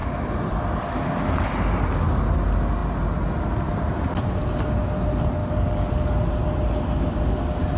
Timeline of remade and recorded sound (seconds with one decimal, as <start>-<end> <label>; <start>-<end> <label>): 0.0-5.4 recorded; 5.4-6.1 remade; 6.1-7.8 recorded